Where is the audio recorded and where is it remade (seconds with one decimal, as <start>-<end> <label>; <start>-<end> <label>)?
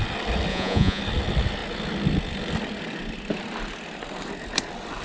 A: 0.0-0.5 recorded; 0.5-1.0 remade; 1.0-5.0 recorded